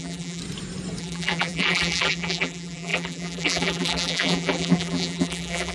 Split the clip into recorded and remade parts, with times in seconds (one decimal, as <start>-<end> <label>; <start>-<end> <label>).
0.0-0.4 remade; 0.4-1.0 recorded; 1.0-5.7 remade